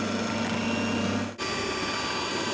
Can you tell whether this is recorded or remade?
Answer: recorded